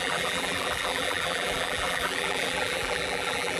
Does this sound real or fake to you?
fake